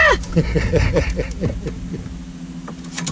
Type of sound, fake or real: real